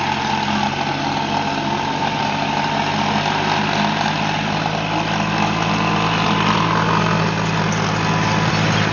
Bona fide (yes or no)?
yes